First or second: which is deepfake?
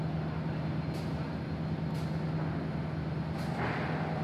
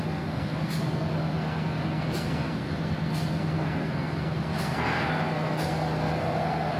second